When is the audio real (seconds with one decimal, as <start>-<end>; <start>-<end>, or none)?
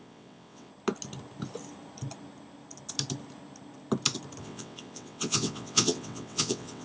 0.7-4.4